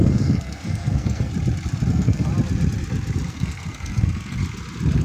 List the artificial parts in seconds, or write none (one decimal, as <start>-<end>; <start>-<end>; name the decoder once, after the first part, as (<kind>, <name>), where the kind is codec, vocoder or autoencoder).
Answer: 0.0-1.3 (codec, SNAC); 1.9-2.3; 3.3-4.4